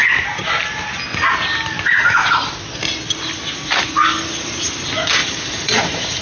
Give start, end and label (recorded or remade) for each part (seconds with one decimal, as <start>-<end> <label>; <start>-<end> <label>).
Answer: 0.0-5.2 recorded; 5.2-6.2 remade